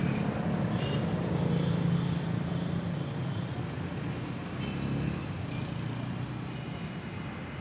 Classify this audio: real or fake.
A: real